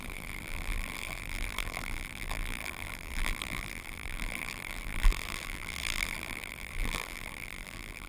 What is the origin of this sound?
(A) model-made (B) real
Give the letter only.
A